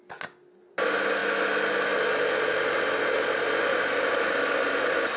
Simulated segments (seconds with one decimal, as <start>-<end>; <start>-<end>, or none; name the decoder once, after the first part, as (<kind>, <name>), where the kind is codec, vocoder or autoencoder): none